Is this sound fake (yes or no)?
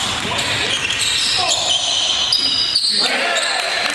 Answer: no